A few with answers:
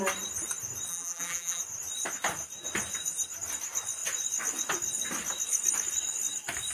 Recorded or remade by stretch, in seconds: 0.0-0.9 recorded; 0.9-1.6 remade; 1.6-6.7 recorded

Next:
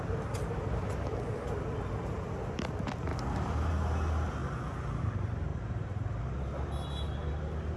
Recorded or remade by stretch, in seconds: 0.0-3.1 recorded; 3.1-3.7 remade; 3.7-4.4 recorded; 4.4-5.0 remade; 5.0-5.5 recorded; 5.5-6.2 remade; 6.2-7.8 recorded

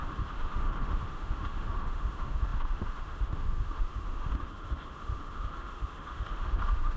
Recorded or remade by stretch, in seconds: 0.0-7.0 remade

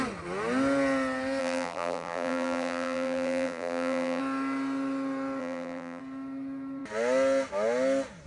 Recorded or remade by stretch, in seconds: 0.0-1.4 recorded; 1.4-4.2 remade; 4.2-5.4 recorded; 5.4-6.0 remade; 6.0-8.3 recorded

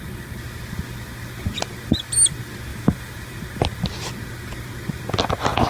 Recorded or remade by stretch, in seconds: 0.0-2.7 recorded; 2.7-3.8 remade; 3.8-5.7 recorded

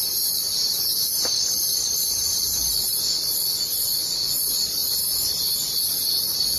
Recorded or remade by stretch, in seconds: 0.0-6.6 remade

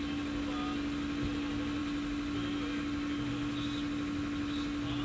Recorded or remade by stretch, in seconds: 0.0-5.0 recorded